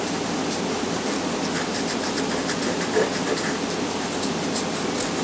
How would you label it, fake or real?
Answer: real